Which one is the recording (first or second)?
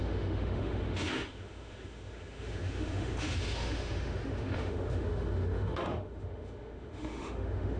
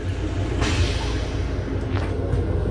second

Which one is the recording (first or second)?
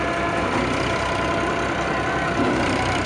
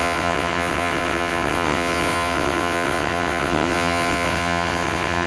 first